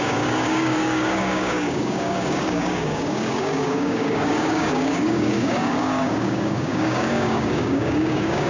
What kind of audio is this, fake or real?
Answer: fake